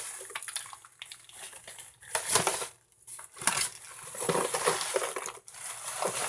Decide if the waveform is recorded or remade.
recorded